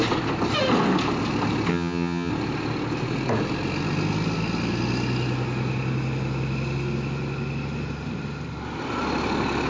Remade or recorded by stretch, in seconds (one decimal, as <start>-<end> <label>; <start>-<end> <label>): 0.0-1.7 recorded; 1.7-2.3 remade; 2.3-9.7 recorded